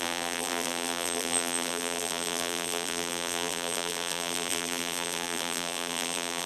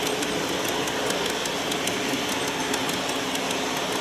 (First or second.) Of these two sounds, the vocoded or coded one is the first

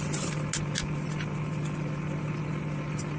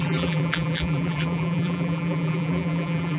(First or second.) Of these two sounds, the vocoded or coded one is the second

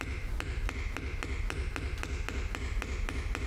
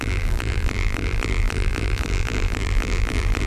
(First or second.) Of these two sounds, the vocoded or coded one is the second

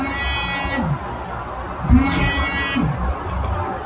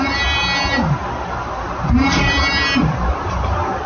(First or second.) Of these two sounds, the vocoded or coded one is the second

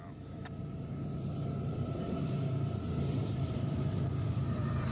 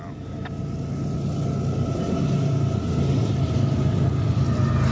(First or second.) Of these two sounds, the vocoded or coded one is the first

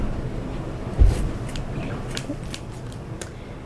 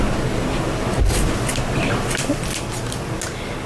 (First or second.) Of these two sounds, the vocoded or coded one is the first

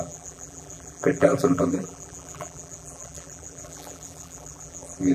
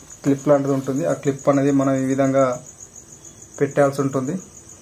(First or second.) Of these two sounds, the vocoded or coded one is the first